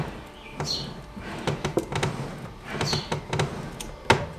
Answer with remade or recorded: recorded